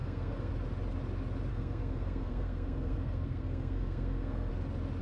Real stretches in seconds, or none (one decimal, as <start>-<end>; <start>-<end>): 0.5-1.5; 4.5-5.0